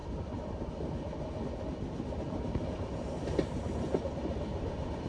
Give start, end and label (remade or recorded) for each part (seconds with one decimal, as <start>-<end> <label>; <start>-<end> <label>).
0.0-5.1 recorded